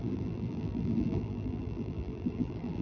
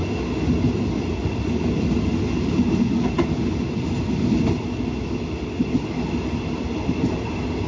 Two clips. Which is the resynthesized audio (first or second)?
first